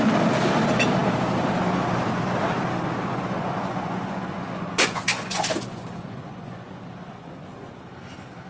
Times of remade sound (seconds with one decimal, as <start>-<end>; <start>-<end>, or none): 3.1-7.7

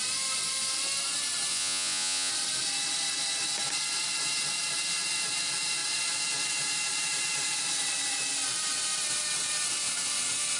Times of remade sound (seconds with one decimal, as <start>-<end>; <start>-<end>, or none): 1.5-2.3